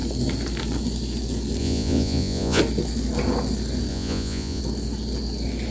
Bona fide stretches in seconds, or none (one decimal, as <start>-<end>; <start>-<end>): 0.0-1.6; 2.6-3.9; 4.6-5.7